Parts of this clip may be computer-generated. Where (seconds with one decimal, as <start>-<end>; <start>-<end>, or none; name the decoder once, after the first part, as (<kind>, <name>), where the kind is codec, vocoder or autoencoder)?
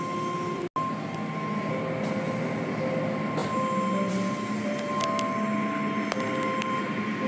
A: none